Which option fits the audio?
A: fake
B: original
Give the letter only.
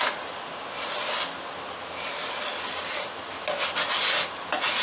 B